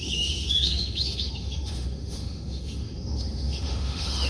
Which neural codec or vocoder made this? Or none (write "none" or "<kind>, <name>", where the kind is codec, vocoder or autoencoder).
autoencoder, DAC-VAE